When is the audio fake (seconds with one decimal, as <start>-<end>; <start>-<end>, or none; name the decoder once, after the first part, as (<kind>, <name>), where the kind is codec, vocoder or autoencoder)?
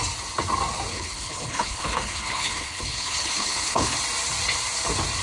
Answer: 0.9-4.0 (codec, HILCodec)